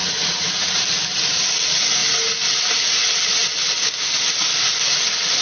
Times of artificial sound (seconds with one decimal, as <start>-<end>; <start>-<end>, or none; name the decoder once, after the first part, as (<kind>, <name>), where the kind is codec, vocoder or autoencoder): 0.0-0.8 (vocoder, Vocos)